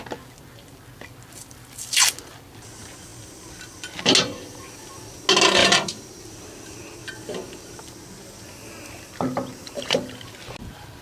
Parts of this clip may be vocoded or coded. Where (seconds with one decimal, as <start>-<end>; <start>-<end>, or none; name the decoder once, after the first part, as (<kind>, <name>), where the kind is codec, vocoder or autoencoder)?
5.6-6.2 (vocoder, BigVGAN v2); 9.5-10.0